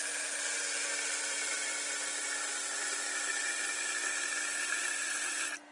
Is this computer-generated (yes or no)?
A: no